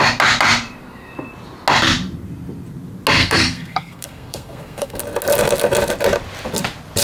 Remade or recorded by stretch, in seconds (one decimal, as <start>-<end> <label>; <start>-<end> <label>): 0.0-3.2 recorded; 3.2-5.0 remade; 5.0-7.0 recorded